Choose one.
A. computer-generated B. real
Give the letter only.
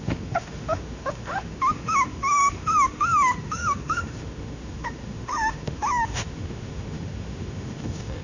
A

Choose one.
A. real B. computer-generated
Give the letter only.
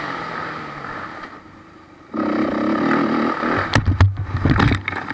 A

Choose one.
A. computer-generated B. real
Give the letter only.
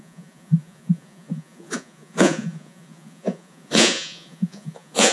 A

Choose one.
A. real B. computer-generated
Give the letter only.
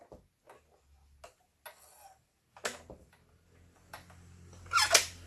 A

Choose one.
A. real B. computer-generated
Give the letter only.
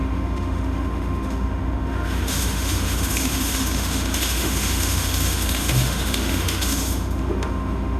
B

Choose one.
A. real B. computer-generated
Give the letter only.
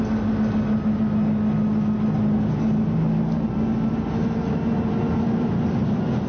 A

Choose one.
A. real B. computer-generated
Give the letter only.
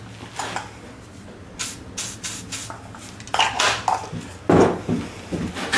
A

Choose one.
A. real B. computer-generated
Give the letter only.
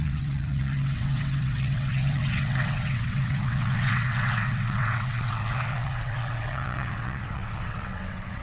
B